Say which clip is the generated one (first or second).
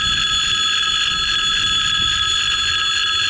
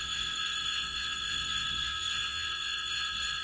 second